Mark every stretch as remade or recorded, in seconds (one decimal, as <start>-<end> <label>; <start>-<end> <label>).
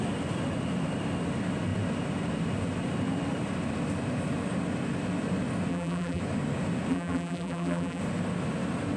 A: 0.0-5.7 recorded; 5.7-6.2 remade; 6.2-6.9 recorded; 6.9-8.0 remade; 8.0-9.0 recorded